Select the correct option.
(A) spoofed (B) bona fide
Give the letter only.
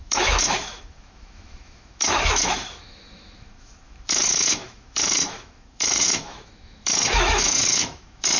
A